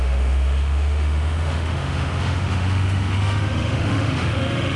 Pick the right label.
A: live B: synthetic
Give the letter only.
B